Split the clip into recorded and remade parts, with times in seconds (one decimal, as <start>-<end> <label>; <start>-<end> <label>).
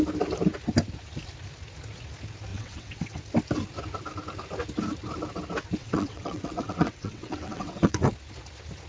0.0-2.5 recorded; 2.5-3.2 remade; 3.2-5.8 recorded; 5.8-8.1 remade; 8.1-8.9 recorded